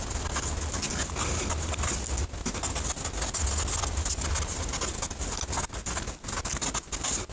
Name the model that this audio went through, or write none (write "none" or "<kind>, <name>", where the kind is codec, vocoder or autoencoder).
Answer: none